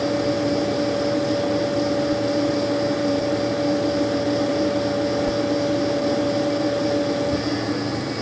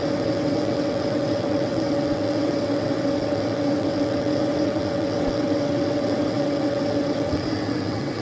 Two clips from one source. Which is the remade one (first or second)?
second